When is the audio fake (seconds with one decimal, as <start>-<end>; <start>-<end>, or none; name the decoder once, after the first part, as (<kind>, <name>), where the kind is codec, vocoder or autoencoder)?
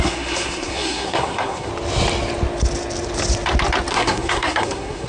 0.0-1.7 (codec, SNAC); 3.9-5.1